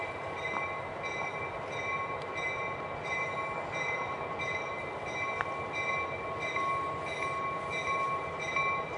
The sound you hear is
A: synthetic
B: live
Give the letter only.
B